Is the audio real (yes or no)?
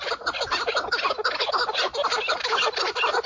yes